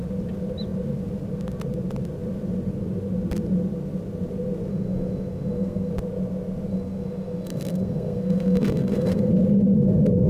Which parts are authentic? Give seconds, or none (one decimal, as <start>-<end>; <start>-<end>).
0.0-4.7; 5.9-6.7; 9.3-10.3